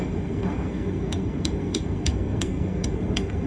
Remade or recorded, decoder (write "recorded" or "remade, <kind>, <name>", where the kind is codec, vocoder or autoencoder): remade, codec, SNAC